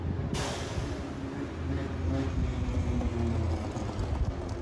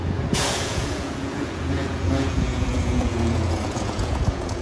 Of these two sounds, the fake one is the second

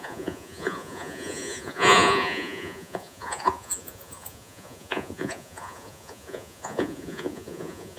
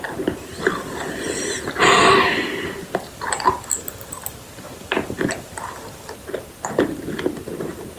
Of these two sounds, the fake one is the first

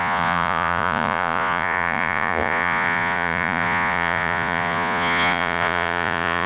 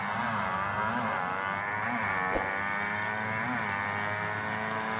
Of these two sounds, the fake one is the first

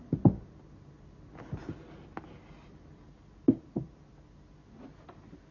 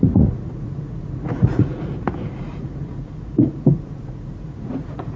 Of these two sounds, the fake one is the second